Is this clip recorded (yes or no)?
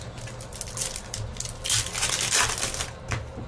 yes